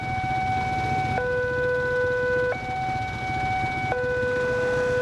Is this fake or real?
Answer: real